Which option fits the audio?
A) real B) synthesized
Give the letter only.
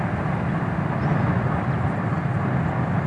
A